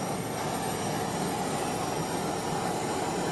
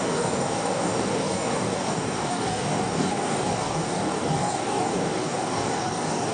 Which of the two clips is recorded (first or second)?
first